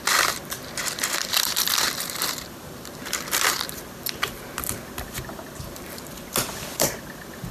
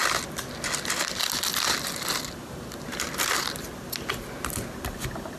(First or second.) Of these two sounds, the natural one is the second